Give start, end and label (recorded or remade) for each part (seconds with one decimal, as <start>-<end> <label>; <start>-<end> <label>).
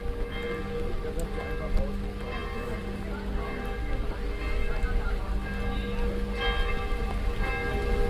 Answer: 0.0-8.1 recorded